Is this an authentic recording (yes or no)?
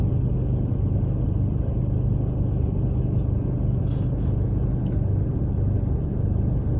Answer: yes